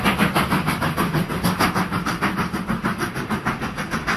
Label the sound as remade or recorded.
recorded